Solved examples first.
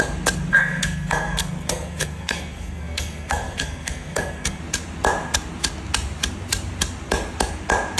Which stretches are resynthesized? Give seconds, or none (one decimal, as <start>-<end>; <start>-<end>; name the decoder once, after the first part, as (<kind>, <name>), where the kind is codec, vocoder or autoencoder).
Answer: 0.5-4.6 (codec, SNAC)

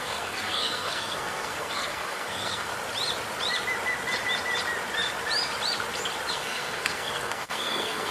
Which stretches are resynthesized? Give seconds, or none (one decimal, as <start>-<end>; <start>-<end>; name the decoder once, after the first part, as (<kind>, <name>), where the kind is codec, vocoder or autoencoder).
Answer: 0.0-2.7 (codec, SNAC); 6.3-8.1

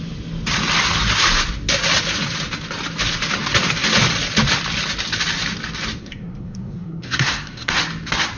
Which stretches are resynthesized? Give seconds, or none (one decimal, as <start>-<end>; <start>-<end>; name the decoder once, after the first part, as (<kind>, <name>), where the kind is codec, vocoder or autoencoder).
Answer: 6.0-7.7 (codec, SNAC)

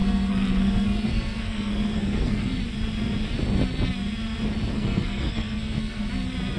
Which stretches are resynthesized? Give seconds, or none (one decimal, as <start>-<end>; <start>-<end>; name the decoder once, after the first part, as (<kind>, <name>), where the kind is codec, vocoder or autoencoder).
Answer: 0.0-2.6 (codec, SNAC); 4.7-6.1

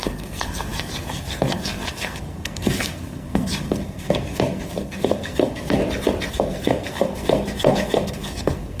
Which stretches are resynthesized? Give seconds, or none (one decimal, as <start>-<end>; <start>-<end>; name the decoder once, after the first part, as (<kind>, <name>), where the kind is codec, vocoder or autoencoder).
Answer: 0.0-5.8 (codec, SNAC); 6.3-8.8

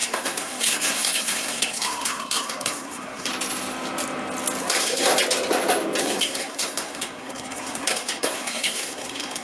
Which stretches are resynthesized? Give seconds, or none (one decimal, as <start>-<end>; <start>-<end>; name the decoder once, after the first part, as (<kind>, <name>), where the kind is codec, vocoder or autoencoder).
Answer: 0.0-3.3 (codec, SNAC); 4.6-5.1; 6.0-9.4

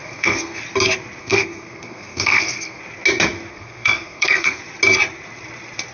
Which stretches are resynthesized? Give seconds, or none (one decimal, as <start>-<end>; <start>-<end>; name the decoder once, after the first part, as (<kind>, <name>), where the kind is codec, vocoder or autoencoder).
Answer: 0.0-0.6 (codec, SNAC); 1.2-2.8; 3.5-4.6

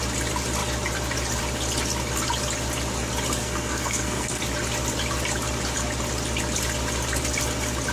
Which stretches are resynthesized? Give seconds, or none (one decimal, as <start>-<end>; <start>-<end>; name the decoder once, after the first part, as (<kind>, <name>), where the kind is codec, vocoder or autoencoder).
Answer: 3.4-4.4 (codec, SNAC)